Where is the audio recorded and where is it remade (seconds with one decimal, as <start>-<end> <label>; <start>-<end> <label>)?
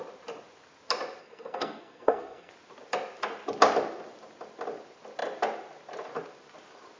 0.0-1.2 recorded; 1.2-2.5 remade; 2.5-7.0 recorded